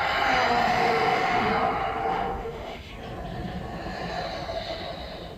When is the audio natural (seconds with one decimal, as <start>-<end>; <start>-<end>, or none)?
0.0-0.7; 1.5-2.1; 2.9-5.4